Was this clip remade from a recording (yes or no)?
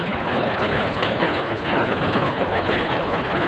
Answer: yes